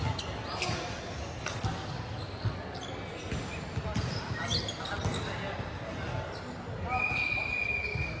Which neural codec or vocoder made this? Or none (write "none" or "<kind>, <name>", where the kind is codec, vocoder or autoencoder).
none